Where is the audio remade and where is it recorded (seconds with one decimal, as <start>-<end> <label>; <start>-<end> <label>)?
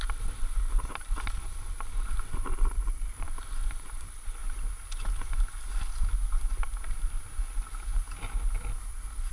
0.0-4.4 remade; 4.4-8.9 recorded; 8.9-9.3 remade